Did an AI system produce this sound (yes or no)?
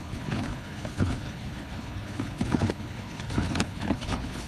yes